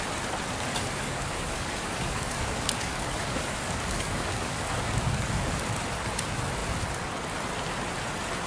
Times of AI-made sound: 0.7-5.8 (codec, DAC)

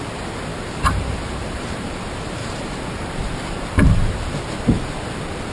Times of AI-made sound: 0.5-1.9 (vocoder, BigVGAN v2); 2.4-4.4

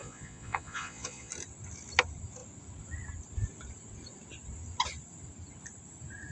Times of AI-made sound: 0.0-1.3 (vocoder, Vocos)

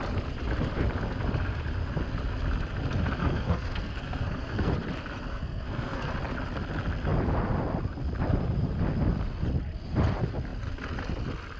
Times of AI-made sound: 3.2-4.7 (codec, SNAC); 5.3-6.1